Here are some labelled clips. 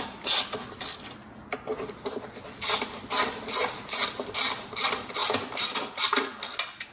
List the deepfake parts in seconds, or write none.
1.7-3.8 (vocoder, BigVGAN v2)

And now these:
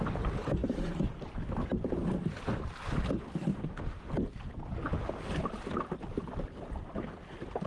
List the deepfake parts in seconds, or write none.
3.5-4.1 (autoencoder, DAC-VAE)

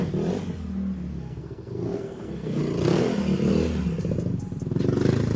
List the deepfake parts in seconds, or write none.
1.1-2.6 (codec, SNAC)

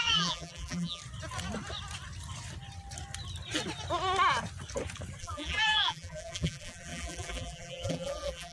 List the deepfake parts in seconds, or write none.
0.0-1.0 (vocoder, BigVGAN v2); 5.2-8.5

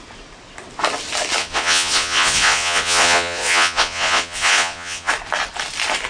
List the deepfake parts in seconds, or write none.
1.4-5.1 (vocoder, Vocos)